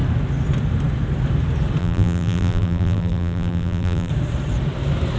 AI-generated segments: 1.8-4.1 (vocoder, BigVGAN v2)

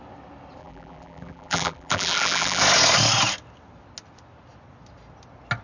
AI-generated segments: 0.6-2.6 (vocoder, BigVGAN v2)

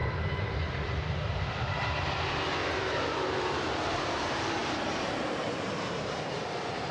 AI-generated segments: 0.0-6.9 (vocoder, BigVGAN v2)

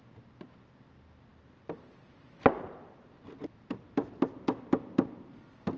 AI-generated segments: none

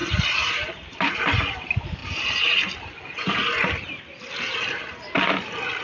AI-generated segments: 0.0-1.1 (vocoder, BigVGAN v2); 2.0-2.9

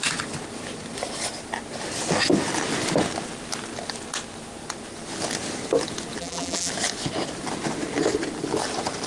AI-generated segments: 6.2-6.7 (vocoder, BigVGAN v2)

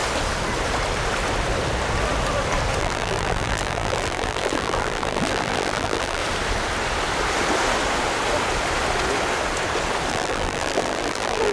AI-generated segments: 2.8-6.2 (vocoder, BigVGAN v2); 10.1-11.5